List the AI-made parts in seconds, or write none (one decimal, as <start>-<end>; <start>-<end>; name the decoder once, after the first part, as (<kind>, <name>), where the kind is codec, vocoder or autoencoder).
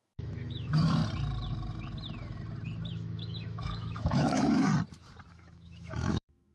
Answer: 0.0-1.0 (autoencoder, DAC-VAE); 2.9-4.7; 5.3-6.5